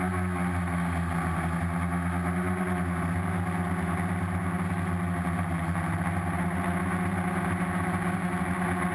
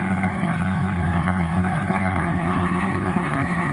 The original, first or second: first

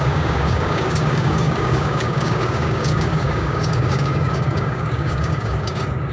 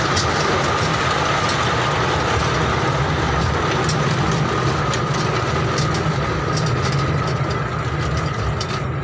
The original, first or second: second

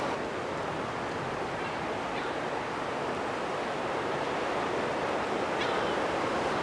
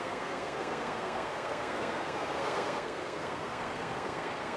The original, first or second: first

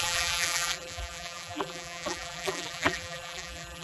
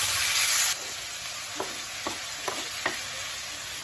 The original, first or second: second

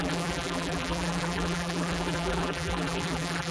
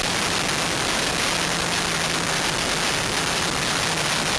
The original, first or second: second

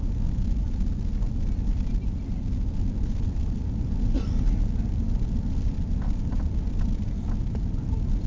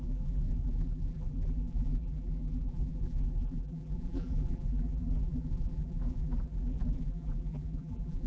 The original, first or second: first